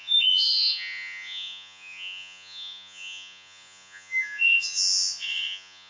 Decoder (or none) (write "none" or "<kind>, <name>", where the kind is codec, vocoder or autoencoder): vocoder, Vocos